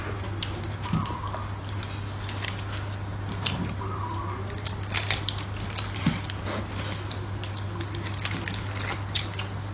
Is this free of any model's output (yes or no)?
yes